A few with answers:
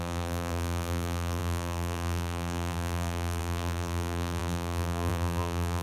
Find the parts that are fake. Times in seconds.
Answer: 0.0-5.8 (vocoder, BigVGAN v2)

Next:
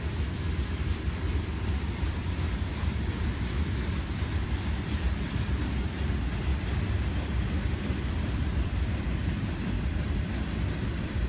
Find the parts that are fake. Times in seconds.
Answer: 0.0-6.5 (vocoder, BigVGAN v2); 7.7-11.3

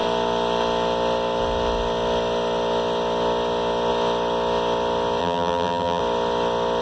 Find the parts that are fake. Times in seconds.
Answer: 5.2-6.0 (vocoder, BigVGAN v2)

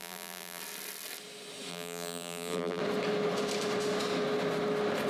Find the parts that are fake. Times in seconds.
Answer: 0.0-0.6 (vocoder, BigVGAN v2); 1.7-2.8